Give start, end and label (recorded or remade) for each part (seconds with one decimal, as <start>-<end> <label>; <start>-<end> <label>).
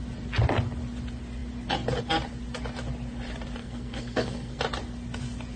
0.0-3.6 recorded; 3.6-4.6 remade; 4.6-5.6 recorded